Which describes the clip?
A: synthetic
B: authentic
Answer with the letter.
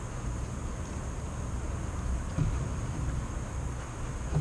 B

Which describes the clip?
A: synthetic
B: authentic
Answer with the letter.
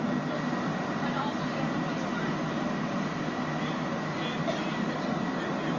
B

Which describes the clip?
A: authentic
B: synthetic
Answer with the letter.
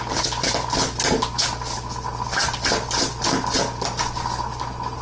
A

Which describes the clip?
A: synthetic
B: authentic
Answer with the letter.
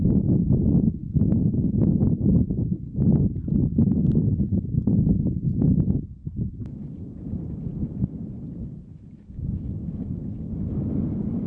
B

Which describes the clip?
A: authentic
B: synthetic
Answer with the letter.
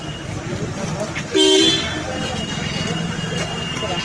A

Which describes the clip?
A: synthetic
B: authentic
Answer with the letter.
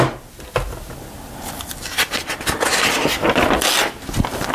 B